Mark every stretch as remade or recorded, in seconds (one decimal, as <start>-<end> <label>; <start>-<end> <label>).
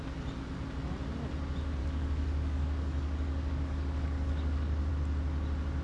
0.0-1.8 recorded; 1.8-4.9 remade; 4.9-5.8 recorded